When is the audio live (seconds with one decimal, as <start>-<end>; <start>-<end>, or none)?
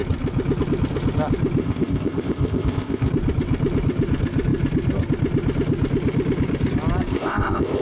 0.0-1.6; 3.1-7.1